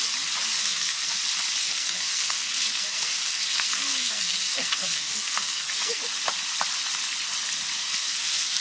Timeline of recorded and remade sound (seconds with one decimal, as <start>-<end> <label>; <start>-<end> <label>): 0.0-0.6 recorded; 0.6-1.2 remade; 1.2-1.6 recorded; 1.6-6.0 remade; 6.0-7.8 recorded; 7.8-8.6 remade